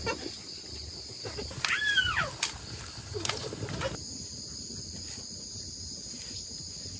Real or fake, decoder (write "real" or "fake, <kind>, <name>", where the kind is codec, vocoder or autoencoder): real